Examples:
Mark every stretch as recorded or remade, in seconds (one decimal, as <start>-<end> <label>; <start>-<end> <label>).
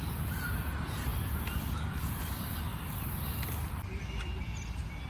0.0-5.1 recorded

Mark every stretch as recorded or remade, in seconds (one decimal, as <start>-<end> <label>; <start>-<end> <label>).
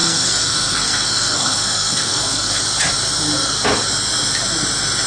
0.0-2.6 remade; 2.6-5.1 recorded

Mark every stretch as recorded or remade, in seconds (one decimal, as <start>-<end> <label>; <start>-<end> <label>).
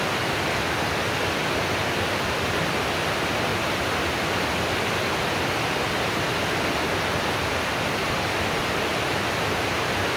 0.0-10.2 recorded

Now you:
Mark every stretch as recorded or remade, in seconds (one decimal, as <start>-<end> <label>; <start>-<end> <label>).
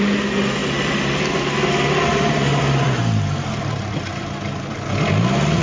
0.0-2.1 recorded; 2.1-3.9 remade; 3.9-5.6 recorded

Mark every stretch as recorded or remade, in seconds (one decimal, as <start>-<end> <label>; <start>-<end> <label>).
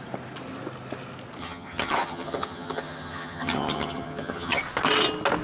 0.0-1.4 recorded; 1.4-4.6 remade; 4.6-5.4 recorded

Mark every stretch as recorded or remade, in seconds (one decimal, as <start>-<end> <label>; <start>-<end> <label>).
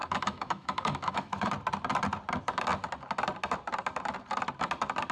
0.0-1.5 remade; 1.5-5.1 recorded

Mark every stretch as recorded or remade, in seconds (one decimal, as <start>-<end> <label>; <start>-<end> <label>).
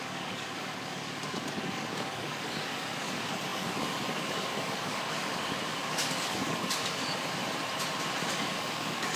0.0-7.4 remade; 7.4-8.3 recorded; 8.3-9.2 remade